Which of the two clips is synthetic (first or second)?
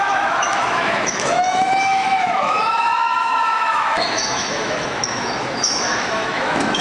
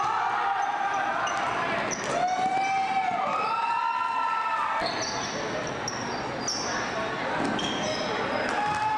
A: first